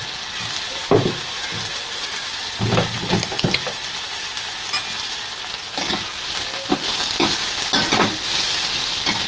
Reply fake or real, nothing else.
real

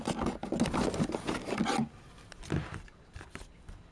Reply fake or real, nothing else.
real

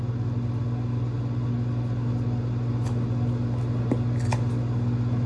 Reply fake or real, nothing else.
real